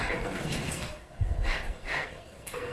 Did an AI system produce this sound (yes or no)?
yes